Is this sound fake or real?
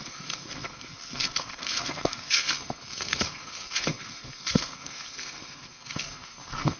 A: fake